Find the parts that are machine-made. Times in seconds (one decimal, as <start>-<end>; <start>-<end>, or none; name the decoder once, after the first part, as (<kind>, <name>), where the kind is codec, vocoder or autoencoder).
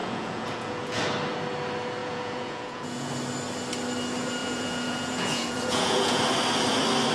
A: 0.0-1.0 (vocoder, Vocos); 2.0-3.1; 4.4-6.2